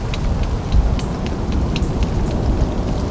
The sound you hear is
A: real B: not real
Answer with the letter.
A